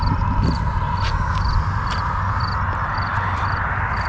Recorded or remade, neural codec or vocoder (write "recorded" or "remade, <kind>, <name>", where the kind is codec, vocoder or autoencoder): recorded